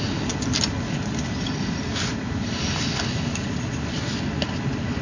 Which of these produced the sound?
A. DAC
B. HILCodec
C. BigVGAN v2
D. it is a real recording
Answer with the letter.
D